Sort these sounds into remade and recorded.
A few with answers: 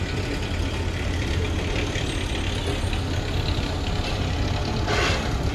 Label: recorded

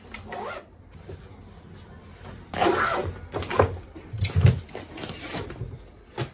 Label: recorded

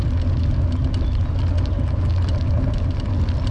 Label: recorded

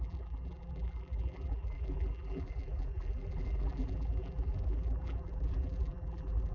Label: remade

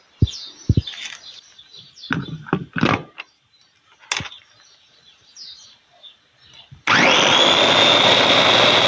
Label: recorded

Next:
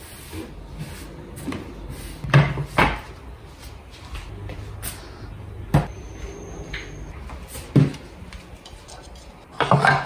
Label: recorded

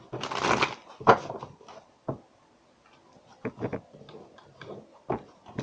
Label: recorded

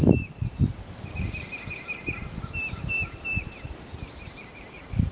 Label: remade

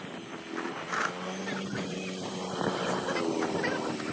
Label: remade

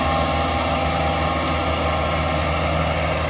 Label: recorded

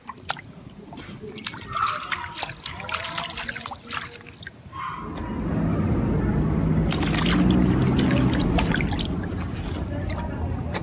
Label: recorded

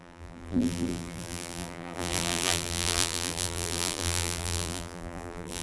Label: remade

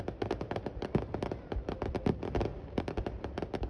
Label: remade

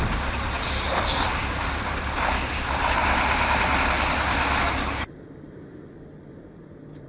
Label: remade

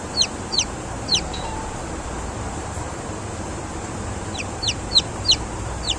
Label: remade